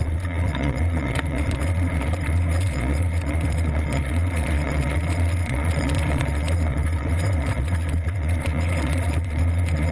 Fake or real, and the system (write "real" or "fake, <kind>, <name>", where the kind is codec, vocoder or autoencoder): fake, vocoder, Vocos